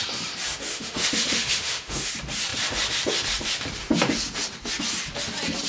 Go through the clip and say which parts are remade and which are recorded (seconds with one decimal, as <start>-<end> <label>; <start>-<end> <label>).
0.0-0.7 recorded; 0.7-2.1 remade; 2.1-5.7 recorded